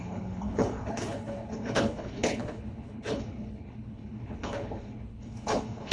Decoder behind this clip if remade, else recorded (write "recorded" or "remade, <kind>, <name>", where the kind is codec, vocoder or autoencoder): remade, codec, HILCodec